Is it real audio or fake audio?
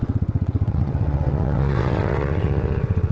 fake